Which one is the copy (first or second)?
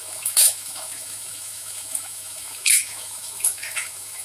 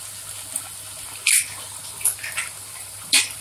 first